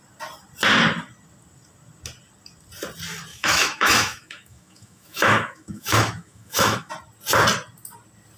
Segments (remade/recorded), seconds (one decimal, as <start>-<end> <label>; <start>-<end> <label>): 0.0-3.3 recorded; 3.3-6.9 remade; 6.9-8.4 recorded